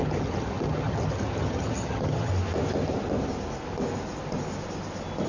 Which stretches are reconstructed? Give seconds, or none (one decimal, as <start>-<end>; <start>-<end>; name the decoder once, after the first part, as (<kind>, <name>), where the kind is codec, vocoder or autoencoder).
0.0-2.3 (vocoder, HiFi-GAN)